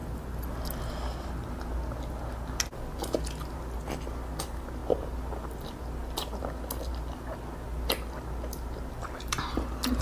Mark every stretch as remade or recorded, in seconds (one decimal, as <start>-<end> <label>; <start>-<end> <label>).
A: 0.0-10.0 recorded